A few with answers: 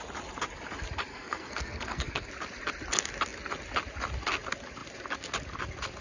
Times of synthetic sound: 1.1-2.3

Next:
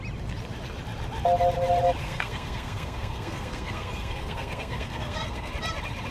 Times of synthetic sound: 2.0-5.5

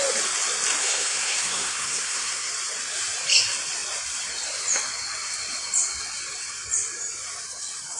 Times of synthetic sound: 0.8-2.5